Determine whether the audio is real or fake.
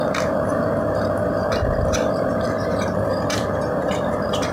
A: fake